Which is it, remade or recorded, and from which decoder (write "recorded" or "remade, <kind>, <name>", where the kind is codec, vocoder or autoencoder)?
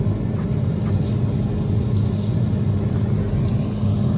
recorded